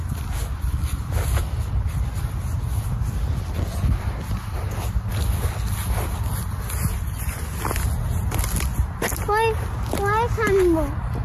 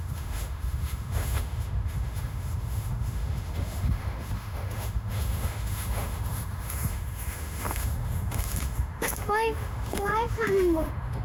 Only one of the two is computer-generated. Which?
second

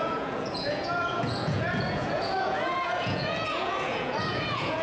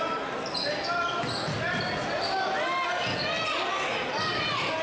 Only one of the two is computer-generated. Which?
first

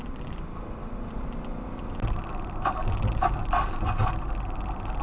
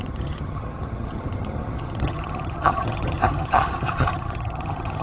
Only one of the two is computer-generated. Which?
second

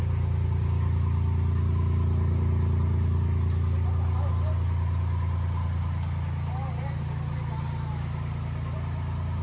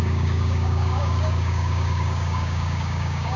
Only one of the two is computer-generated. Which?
second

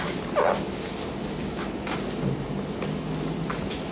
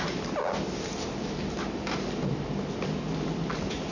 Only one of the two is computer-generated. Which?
second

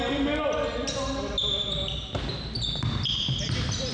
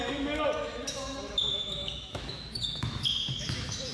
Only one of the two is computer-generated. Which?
second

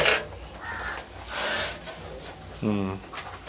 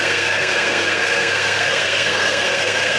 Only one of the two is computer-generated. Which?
second